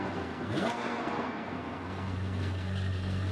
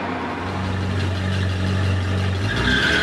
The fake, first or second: first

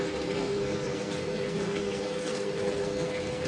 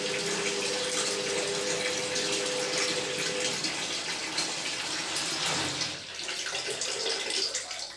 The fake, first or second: first